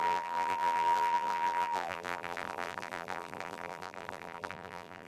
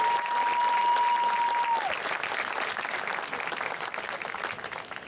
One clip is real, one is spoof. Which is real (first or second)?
second